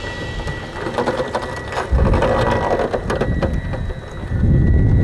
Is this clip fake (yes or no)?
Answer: no